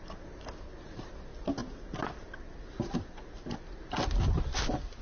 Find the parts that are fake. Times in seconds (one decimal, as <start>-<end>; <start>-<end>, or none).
1.6-4.6